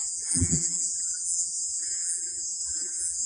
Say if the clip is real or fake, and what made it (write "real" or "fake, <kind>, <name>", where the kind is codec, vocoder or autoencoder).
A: fake, vocoder, BigVGAN v2